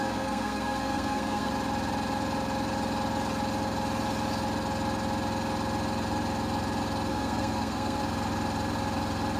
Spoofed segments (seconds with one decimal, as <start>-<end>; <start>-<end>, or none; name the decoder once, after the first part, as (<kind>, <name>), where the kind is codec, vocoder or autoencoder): 0.0-1.5 (codec, SNAC); 7.1-8.0